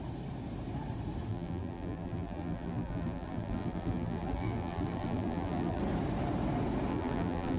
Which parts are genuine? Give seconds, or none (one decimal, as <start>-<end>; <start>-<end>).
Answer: 0.0-1.3; 5.8-6.9